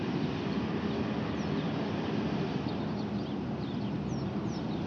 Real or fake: real